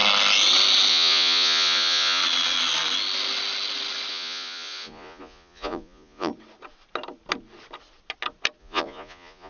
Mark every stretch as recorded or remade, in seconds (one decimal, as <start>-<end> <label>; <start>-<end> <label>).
0.0-0.9 recorded; 0.9-2.2 remade; 2.2-4.1 recorded; 4.1-6.3 remade; 6.3-8.6 recorded; 8.6-9.5 remade